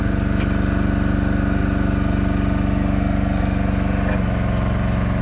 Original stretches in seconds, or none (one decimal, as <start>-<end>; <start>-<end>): 0.0-5.2